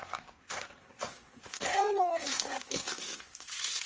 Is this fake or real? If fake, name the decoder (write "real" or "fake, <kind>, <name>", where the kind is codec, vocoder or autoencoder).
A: fake, codec, SNAC